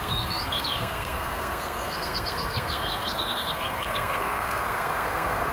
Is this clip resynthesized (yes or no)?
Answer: yes